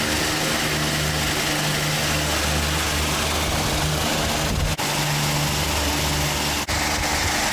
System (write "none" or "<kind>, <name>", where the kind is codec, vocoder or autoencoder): none